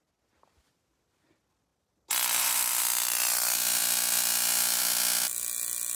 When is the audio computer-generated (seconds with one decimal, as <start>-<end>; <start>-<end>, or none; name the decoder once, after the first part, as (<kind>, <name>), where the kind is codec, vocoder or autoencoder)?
none